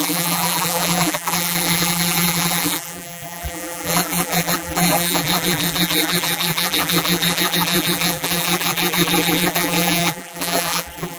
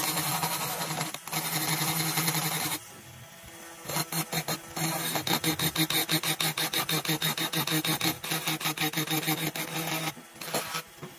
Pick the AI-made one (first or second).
first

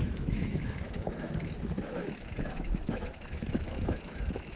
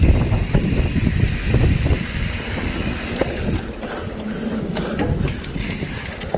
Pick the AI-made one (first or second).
first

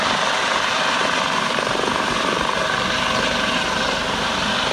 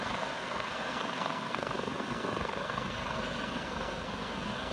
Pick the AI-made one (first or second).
second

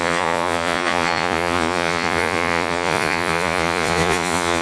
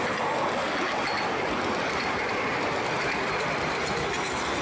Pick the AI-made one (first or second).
first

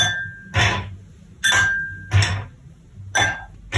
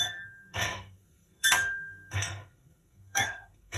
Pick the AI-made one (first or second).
second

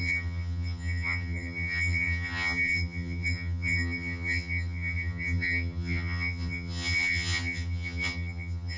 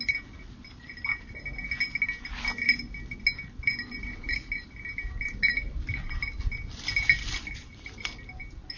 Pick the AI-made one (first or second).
first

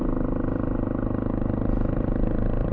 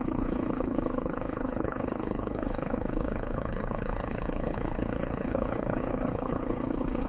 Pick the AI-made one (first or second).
second